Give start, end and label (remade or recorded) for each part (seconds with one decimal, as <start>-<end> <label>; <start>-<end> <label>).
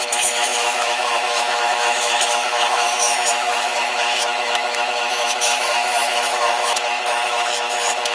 0.0-8.1 remade